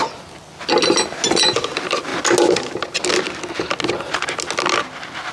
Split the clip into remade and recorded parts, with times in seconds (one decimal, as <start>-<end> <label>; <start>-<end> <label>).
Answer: 0.0-5.3 recorded